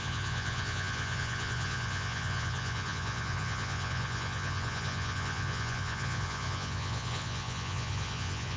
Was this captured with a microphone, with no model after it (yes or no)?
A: no